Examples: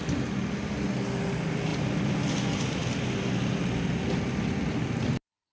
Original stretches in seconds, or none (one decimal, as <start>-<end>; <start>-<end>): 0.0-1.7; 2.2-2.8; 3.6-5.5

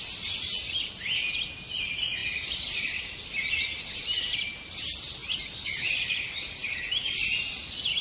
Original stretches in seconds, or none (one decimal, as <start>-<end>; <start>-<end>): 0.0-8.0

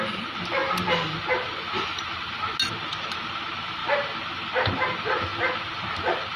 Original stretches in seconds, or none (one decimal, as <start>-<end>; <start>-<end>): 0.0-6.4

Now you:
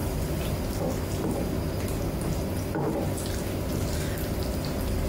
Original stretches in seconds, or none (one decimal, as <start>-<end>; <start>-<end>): 0.7-5.1

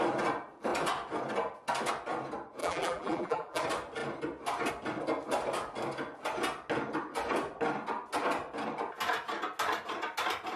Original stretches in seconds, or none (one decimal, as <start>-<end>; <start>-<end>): 0.0-2.6; 3.6-10.6

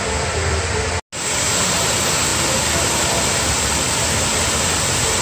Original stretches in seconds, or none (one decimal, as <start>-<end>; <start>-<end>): 0.0-5.2

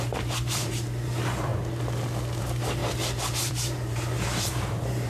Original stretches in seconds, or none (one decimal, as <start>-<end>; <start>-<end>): 1.5-2.4; 2.8-3.5

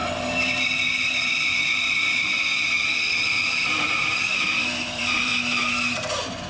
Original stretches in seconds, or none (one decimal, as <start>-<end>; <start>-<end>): 0.0-1.8; 2.3-3.7; 5.3-6.5